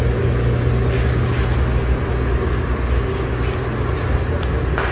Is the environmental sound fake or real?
real